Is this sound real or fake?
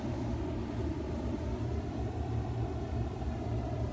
fake